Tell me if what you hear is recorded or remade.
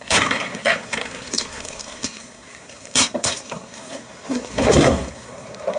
remade